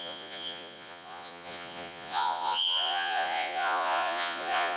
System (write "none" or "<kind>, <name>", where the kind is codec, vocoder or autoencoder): vocoder, Vocos